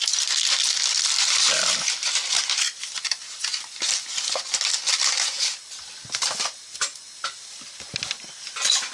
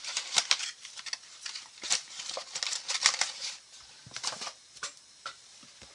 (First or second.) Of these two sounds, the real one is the first